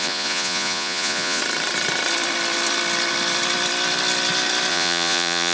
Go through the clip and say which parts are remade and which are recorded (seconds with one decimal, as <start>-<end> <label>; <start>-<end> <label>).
0.0-1.4 remade; 1.4-4.7 recorded; 4.7-5.5 remade